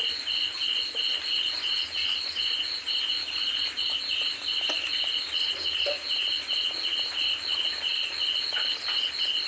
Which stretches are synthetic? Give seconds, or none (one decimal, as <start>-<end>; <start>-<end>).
none